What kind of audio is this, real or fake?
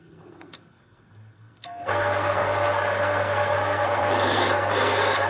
fake